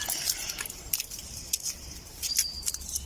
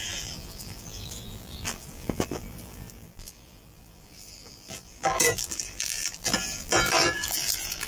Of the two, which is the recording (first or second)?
first